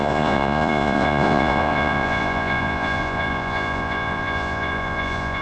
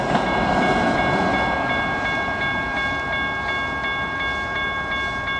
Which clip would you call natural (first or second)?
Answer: second